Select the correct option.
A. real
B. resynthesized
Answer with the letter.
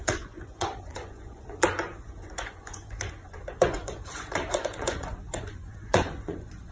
B